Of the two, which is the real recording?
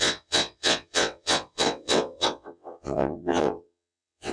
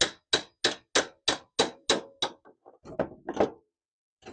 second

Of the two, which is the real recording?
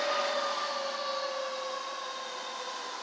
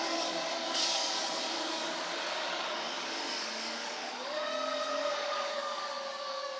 first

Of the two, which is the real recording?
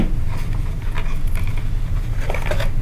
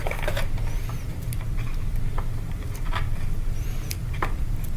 first